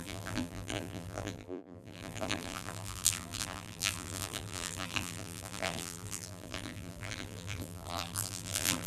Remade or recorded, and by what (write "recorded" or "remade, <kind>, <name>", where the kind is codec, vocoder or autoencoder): remade, vocoder, BigVGAN v2